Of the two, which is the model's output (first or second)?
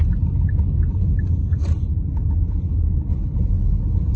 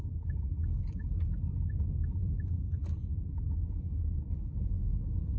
second